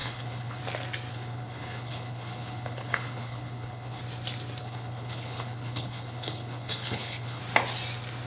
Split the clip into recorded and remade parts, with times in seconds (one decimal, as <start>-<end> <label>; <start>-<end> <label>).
0.0-0.6 remade; 0.6-1.1 recorded; 1.1-4.0 remade; 4.0-4.6 recorded; 4.6-7.4 remade; 7.4-8.3 recorded